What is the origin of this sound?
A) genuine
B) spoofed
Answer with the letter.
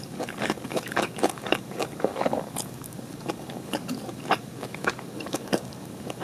B